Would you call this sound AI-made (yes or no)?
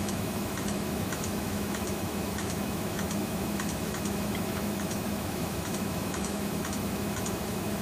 yes